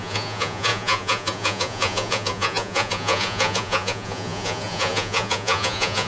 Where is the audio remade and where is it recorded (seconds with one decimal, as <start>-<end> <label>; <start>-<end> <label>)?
0.0-6.1 remade